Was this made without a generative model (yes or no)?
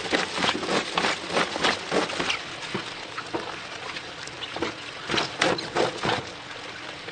yes